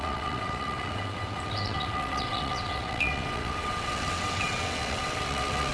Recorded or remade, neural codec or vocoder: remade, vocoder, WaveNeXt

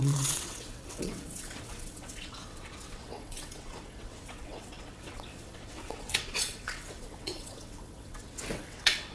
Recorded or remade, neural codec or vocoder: remade, vocoder, WaveNeXt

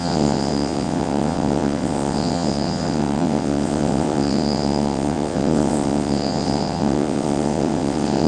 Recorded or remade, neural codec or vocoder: remade, vocoder, WaveNeXt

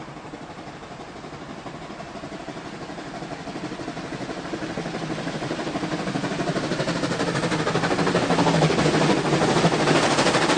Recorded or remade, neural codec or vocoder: recorded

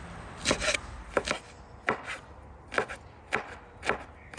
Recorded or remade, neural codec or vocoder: recorded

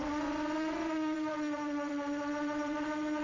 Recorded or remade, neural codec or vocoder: remade, vocoder, WaveNeXt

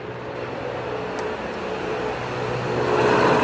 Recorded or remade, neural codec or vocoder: recorded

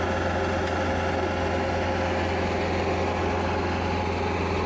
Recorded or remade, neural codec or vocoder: recorded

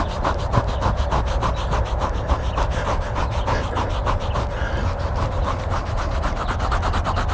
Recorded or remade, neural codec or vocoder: recorded